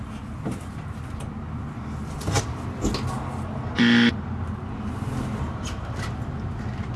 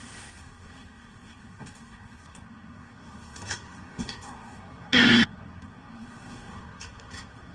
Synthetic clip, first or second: second